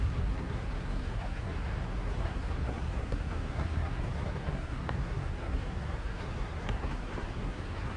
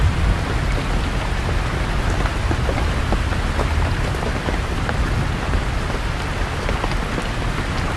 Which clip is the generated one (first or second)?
first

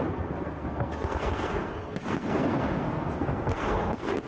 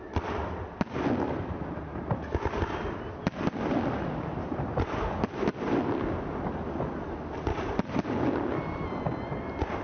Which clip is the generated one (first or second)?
first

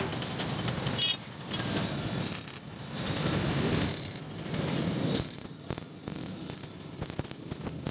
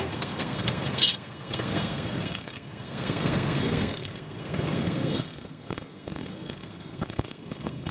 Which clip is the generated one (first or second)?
second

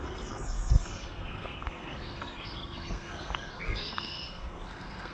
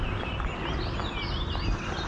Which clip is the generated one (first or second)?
first